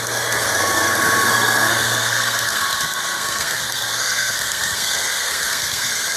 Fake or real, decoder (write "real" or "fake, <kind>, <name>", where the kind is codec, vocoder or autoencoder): fake, codec, SNAC